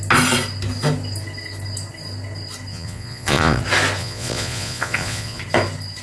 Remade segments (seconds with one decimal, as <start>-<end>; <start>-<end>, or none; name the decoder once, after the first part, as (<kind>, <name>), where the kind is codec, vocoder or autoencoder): 2.7-3.6 (vocoder, Vocos); 4.0-5.4